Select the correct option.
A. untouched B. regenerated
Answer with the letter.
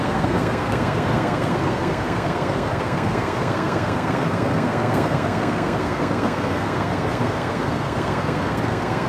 B